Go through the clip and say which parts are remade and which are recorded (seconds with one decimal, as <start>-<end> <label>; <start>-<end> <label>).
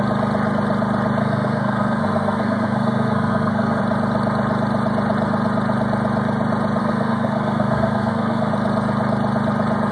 0.0-1.2 recorded; 1.2-3.8 remade; 3.8-6.8 recorded; 6.8-8.5 remade; 8.5-9.9 recorded